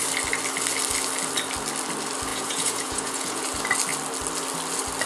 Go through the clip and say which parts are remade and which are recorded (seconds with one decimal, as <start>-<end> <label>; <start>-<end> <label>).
0.0-2.3 recorded; 2.3-3.4 remade; 3.4-5.1 recorded

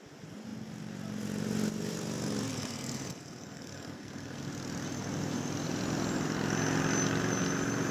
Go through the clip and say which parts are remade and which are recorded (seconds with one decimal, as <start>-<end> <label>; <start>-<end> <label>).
0.0-2.5 recorded; 2.5-4.4 remade; 4.4-7.9 recorded

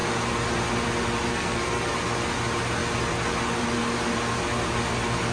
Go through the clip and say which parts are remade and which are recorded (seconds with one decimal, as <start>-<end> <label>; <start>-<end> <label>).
0.0-1.3 recorded; 1.3-1.9 remade; 1.9-5.3 recorded

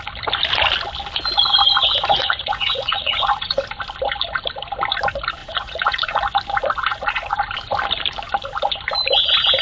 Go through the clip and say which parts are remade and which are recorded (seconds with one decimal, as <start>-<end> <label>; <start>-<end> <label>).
0.0-2.1 recorded; 2.1-3.6 remade; 3.6-5.4 recorded; 5.4-6.2 remade; 6.2-6.9 recorded; 6.9-7.4 remade; 7.4-9.6 recorded

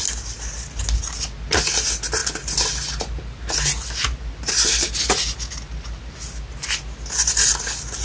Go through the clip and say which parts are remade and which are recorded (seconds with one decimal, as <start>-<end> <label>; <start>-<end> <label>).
0.0-8.0 recorded